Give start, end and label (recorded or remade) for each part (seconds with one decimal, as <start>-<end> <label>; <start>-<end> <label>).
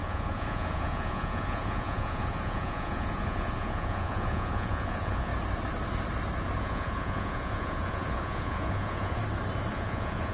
0.0-5.3 remade; 5.3-6.6 recorded; 6.6-9.2 remade; 9.2-9.7 recorded; 9.7-10.3 remade